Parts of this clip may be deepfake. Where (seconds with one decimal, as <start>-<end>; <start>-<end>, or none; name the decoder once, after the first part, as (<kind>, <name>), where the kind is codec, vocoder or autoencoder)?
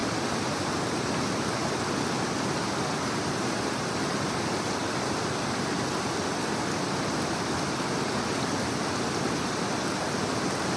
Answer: 0.0-0.6 (vocoder, BigVGAN v2)